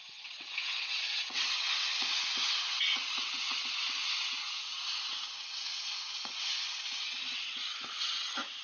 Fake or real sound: fake